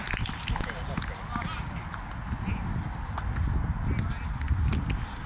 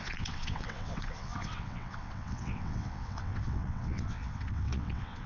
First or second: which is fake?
second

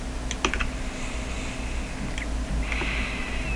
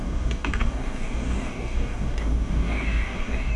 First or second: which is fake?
second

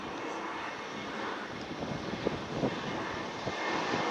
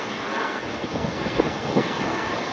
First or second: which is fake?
second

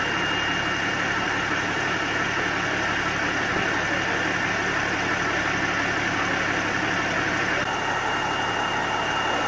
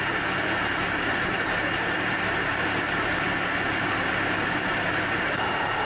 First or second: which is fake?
second